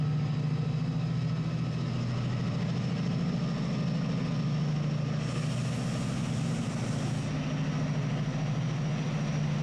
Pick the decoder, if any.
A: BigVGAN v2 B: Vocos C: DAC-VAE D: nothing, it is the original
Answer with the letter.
D